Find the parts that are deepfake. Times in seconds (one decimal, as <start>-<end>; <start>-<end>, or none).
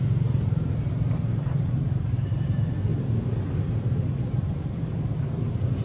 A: 0.0-2.9; 4.1-5.8